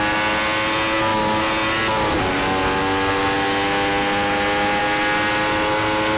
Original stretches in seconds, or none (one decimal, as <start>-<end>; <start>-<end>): 0.0-6.2